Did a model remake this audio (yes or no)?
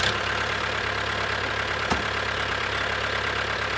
yes